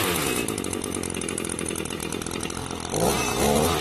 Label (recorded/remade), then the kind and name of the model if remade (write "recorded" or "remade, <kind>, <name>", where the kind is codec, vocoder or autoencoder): recorded